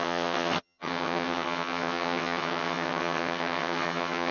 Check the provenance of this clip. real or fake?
fake